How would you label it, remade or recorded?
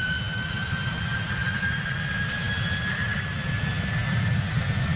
recorded